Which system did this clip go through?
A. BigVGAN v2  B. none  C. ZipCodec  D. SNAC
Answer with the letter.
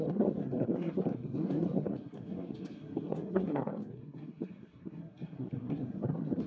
D